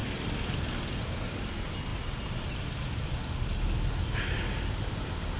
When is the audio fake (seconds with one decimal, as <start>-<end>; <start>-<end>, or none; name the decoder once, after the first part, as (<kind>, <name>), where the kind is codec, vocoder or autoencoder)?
none